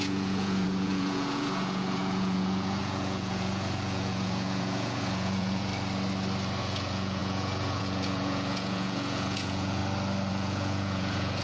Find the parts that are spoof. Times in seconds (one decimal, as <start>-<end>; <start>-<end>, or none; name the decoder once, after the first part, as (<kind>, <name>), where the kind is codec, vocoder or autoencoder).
0.0-5.7 (vocoder, Vocos); 6.6-9.8; 10.3-11.4